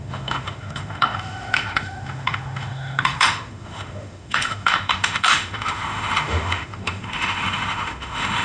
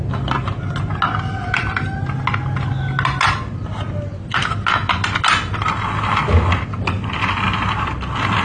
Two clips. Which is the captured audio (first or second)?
second